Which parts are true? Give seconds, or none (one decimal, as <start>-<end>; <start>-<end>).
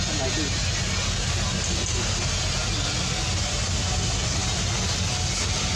0.0-5.8